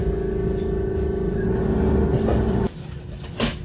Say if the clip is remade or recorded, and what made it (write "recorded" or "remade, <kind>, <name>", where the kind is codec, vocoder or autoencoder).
recorded